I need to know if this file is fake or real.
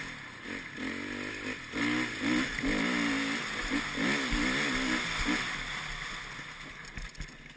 real